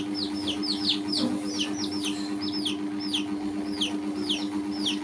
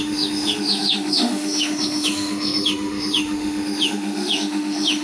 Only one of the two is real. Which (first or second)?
first